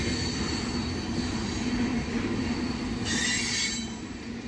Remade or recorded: recorded